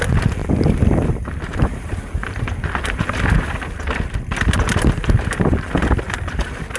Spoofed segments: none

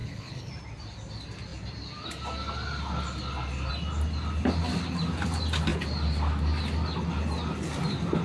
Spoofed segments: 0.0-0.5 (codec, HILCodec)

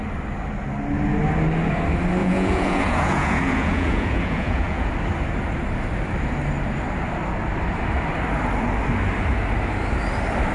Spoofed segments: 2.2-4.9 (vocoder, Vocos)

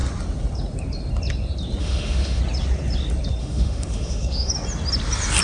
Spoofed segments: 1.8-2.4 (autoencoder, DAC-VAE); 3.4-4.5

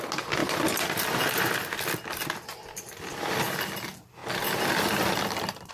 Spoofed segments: 0.4-3.4 (vocoder, BigVGAN v2); 4.2-5.7

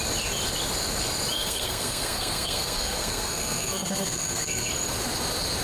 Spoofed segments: 1.3-4.7 (codec, SNAC)

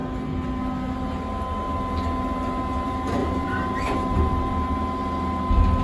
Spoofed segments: 3.2-4.5 (vocoder, BigVGAN v2)